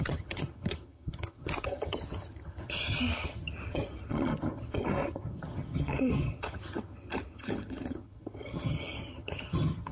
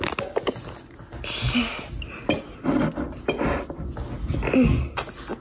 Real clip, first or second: second